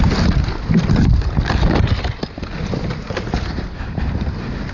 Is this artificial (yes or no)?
no